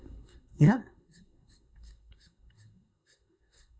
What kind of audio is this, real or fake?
fake